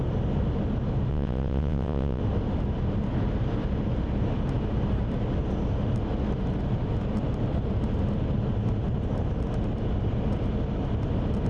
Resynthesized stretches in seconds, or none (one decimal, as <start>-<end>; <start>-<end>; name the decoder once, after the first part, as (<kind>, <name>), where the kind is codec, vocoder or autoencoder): 1.1-2.2 (vocoder, WaveNeXt)